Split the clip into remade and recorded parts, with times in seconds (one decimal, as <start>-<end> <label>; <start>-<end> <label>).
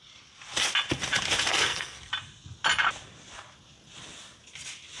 0.0-1.5 recorded; 1.5-2.1 remade; 2.1-5.0 recorded